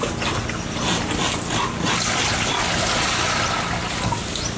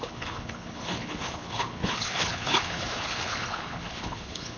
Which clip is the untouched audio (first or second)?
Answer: first